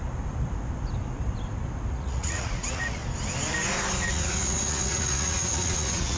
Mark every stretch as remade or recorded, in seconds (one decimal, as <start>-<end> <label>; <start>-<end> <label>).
0.0-1.9 recorded; 1.9-3.0 remade; 3.0-4.0 recorded; 4.0-6.2 remade